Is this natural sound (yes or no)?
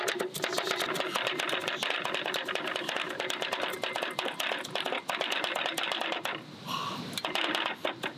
yes